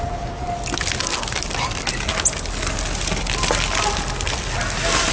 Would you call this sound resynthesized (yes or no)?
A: no